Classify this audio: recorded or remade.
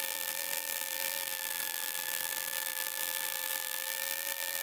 remade